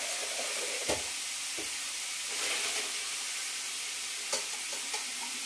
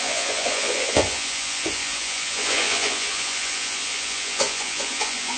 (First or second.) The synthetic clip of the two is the second